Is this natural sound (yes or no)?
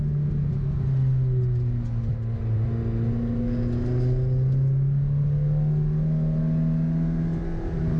yes